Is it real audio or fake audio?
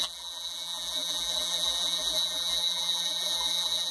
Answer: fake